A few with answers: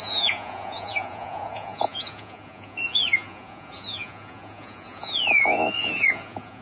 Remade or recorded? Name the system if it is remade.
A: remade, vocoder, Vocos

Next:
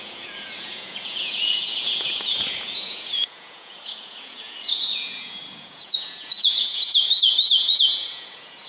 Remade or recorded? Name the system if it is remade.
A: remade, vocoder, Vocos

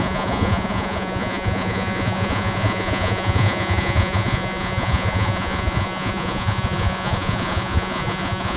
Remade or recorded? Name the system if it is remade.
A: remade, vocoder, Vocos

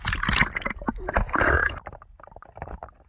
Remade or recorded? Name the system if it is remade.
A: recorded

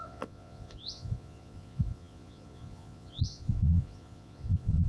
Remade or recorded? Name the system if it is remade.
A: remade, vocoder, Vocos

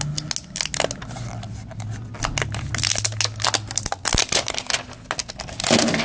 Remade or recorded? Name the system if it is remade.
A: recorded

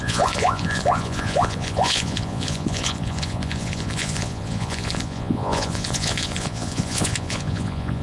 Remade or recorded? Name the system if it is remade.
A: remade, vocoder, Vocos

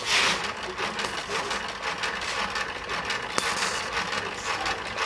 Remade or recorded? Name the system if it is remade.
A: recorded